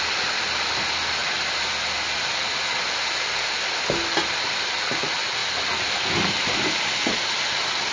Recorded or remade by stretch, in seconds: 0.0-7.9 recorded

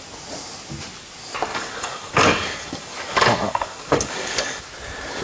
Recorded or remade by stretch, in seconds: 0.0-1.5 recorded; 1.5-4.6 remade; 4.6-5.2 recorded